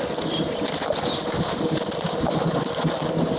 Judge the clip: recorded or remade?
recorded